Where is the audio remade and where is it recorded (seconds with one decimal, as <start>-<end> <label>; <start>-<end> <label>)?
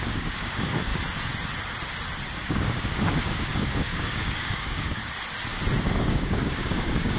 0.0-0.9 remade; 0.9-2.5 recorded; 2.5-5.0 remade; 5.0-5.8 recorded; 5.8-7.2 remade